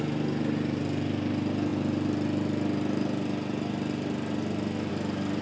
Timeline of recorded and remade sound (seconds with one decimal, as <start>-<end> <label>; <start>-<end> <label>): 0.0-5.4 recorded